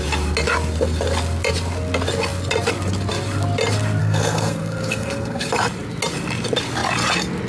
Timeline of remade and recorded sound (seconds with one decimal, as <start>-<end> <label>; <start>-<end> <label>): 0.0-4.0 recorded; 4.0-5.5 remade; 5.5-7.5 recorded